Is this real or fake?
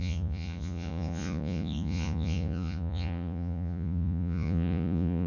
fake